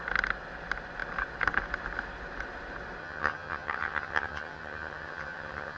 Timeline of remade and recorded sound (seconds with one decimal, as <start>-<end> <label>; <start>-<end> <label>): 0.0-3.0 recorded; 3.0-5.8 remade

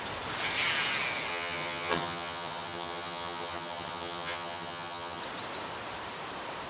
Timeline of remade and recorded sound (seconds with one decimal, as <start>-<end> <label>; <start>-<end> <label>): 0.0-1.3 recorded; 1.3-5.2 remade; 5.2-6.7 recorded

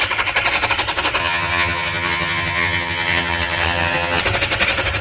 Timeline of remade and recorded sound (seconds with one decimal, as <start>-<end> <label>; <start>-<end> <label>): 0.0-1.2 recorded; 1.2-4.2 remade; 4.2-5.0 recorded

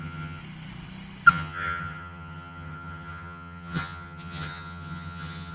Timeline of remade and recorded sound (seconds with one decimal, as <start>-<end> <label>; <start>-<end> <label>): 0.0-0.4 remade; 0.4-1.3 recorded; 1.3-5.5 remade

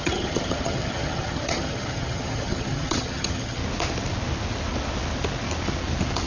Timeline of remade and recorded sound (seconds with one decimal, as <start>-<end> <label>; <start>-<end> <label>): 0.0-3.6 remade; 3.6-6.3 recorded

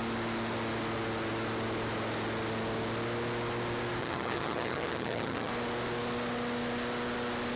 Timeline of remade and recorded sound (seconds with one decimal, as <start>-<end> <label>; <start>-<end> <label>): 0.0-4.0 recorded; 4.0-5.5 remade; 5.5-7.6 recorded

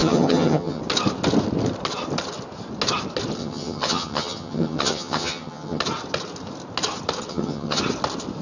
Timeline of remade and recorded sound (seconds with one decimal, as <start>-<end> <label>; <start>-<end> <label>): 0.0-0.8 remade; 0.8-3.4 recorded; 3.4-5.8 remade; 5.8-7.3 recorded; 7.3-7.8 remade; 7.8-8.4 recorded

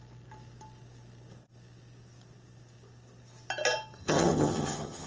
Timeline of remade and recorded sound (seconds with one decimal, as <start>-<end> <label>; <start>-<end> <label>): 0.0-4.0 recorded; 4.0-5.1 remade